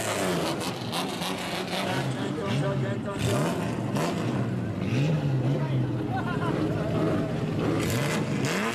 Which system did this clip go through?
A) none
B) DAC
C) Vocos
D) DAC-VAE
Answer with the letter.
A